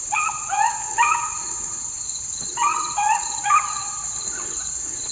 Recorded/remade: remade